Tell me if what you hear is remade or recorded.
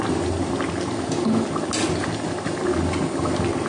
recorded